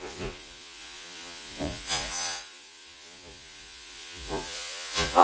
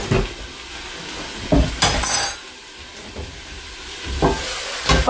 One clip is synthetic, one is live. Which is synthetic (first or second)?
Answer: first